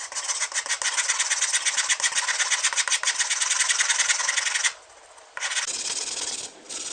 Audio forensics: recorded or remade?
recorded